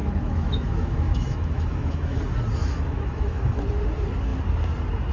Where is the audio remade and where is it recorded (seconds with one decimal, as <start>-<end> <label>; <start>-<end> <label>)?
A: 0.0-2.2 remade; 2.2-2.6 recorded; 2.6-3.6 remade; 3.6-5.1 recorded